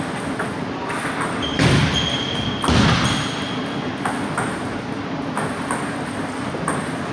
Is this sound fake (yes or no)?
no